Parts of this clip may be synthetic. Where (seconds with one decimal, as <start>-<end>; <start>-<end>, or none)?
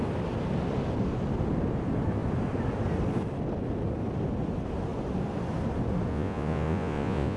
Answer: 6.1-7.4